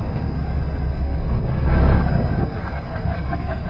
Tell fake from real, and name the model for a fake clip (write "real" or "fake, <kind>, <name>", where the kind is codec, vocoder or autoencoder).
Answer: fake, codec, SNAC